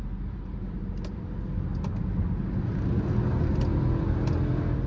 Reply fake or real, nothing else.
real